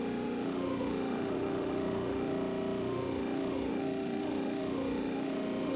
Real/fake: fake